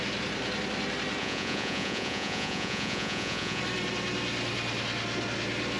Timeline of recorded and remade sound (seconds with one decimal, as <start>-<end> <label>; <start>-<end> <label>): 0.0-1.2 recorded; 1.2-3.6 remade; 3.6-5.8 recorded